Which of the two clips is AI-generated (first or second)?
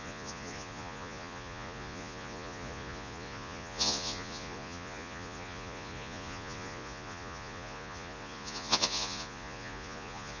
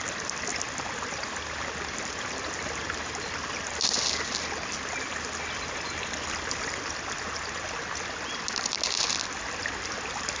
first